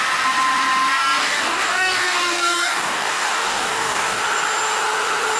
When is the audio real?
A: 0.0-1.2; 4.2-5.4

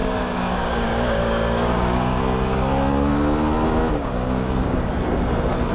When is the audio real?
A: 2.2-3.8; 4.9-5.7

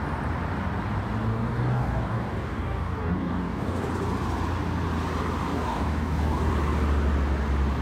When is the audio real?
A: 0.0-1.3; 3.9-5.5; 6.5-7.8

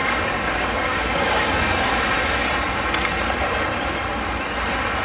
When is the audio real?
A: 1.9-5.0

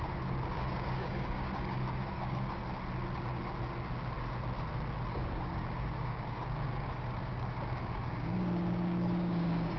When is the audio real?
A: 2.6-5.1

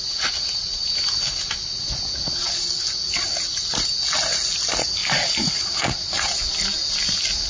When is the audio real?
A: 0.0-7.5

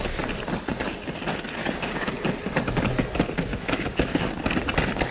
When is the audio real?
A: 0.0-1.6; 2.1-3.5; 4.3-5.1

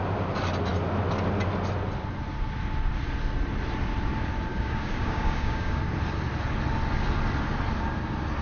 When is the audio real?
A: 0.0-4.5; 5.8-8.4